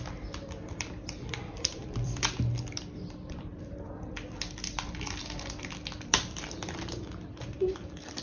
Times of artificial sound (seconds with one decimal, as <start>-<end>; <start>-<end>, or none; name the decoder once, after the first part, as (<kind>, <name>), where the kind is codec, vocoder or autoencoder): 0.0-8.2 (vocoder, BigVGAN v2)